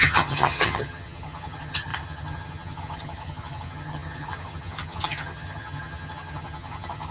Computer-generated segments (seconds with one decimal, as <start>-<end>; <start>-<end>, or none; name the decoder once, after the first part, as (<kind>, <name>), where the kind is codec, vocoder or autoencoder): 0.0-7.1 (vocoder, HiFi-GAN)